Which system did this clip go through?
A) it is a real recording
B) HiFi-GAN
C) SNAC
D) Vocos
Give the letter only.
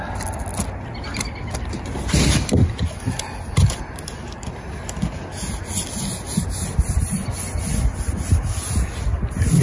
A